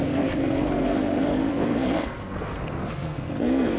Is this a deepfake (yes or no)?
yes